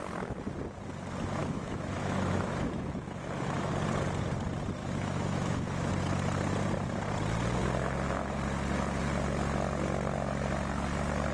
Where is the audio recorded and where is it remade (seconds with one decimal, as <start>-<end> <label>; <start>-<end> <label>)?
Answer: 0.0-1.4 recorded; 1.4-3.7 remade; 3.7-4.8 recorded; 4.8-5.9 remade; 5.9-11.3 recorded